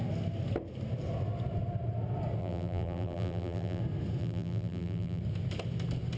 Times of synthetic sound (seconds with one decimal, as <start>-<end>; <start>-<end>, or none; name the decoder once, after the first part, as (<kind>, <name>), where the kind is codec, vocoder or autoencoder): 2.4-3.8 (vocoder, BigVGAN v2); 4.2-5.2